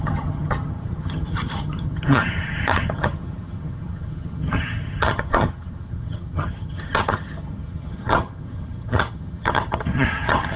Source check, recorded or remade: remade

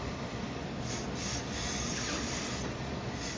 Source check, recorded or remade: recorded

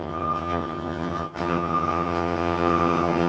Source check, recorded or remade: remade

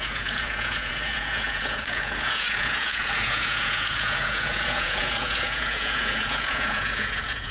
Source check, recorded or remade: remade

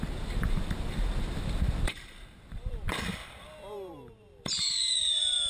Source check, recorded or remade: remade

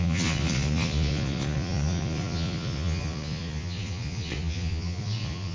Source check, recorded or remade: remade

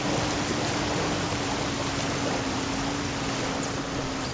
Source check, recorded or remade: recorded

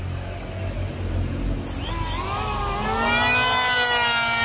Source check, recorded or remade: recorded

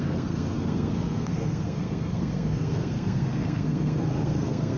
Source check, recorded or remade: remade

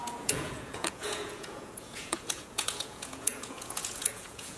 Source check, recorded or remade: remade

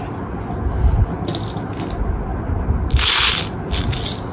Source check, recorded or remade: recorded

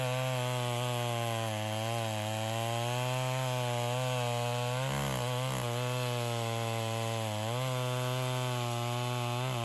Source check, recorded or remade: recorded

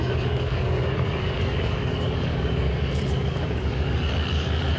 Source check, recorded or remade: remade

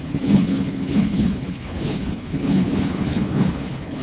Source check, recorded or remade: remade